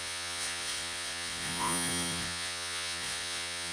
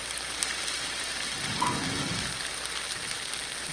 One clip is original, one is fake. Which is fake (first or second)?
first